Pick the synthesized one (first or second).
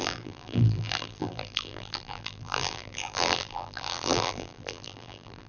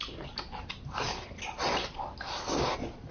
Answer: first